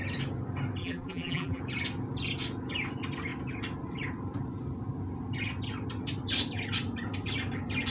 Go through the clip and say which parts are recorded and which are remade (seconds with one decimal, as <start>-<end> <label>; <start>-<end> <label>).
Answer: 0.0-0.8 recorded; 0.8-1.6 remade; 1.6-7.9 recorded